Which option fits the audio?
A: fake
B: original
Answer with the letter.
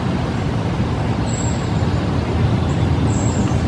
B